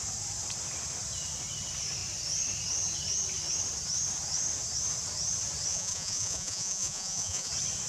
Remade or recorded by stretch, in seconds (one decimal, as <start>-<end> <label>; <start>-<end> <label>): 0.0-5.7 recorded; 5.7-7.5 remade; 7.5-7.9 recorded